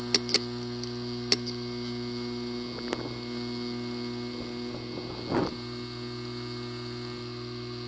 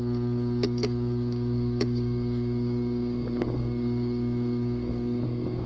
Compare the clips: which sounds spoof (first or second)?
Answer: second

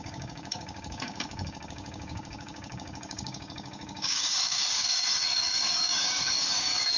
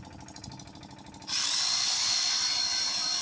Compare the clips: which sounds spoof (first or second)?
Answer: first